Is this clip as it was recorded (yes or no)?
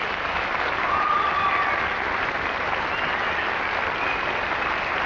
yes